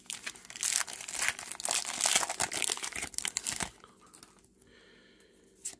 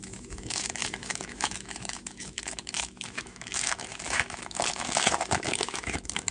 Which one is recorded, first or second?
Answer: first